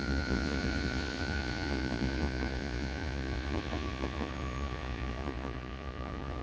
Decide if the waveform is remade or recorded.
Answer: remade